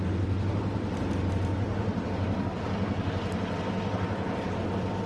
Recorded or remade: recorded